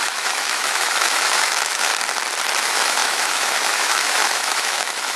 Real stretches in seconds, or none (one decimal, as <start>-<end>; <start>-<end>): 1.9-2.6